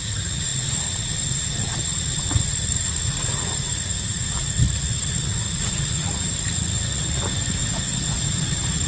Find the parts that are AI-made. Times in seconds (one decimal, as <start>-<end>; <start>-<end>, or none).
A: 0.0-7.6; 8.1-8.9